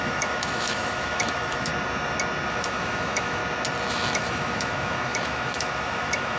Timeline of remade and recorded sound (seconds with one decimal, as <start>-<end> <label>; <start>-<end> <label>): 0.0-1.7 remade; 1.7-2.5 recorded; 2.5-3.4 remade; 3.4-3.9 recorded; 3.9-6.4 remade